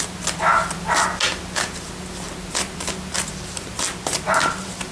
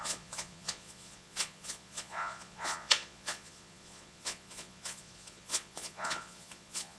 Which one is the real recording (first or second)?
first